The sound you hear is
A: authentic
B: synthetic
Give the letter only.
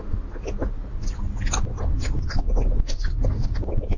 A